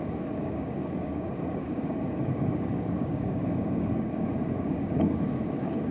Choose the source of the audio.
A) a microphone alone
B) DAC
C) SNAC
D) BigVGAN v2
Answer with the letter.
B